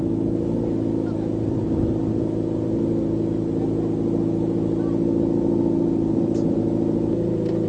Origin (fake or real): real